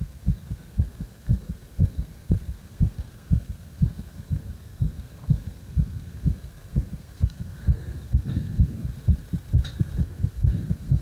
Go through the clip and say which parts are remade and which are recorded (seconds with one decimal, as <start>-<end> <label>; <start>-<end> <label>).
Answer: 0.0-8.9 remade; 8.9-10.0 recorded; 10.0-11.0 remade